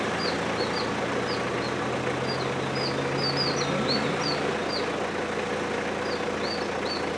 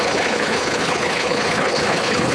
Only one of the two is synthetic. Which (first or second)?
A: second